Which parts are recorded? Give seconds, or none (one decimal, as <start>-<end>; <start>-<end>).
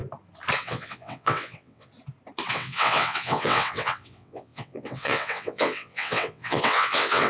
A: 0.0-0.6; 1.9-2.5